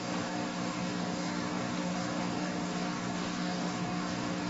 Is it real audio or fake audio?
fake